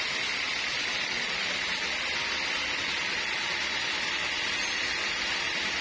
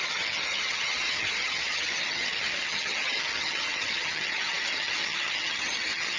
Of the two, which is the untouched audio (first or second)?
first